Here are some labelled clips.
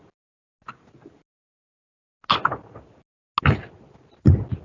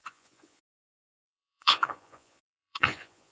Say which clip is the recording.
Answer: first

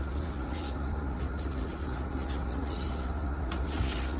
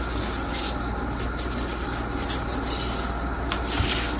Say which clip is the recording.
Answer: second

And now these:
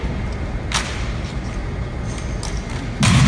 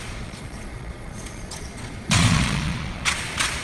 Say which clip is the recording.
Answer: first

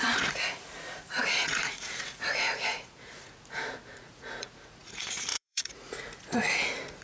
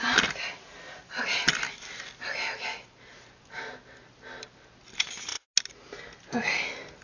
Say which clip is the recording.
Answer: second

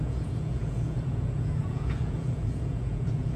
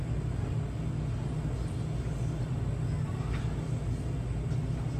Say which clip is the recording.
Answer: second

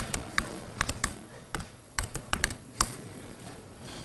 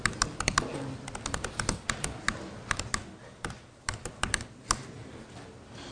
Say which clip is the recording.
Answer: second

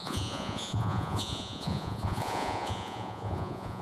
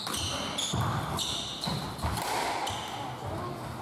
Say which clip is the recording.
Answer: second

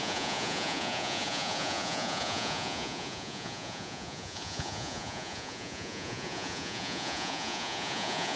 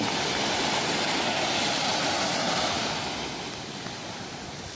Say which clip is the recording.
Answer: second